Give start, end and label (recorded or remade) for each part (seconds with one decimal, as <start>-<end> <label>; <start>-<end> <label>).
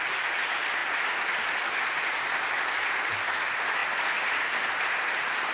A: 0.0-5.5 recorded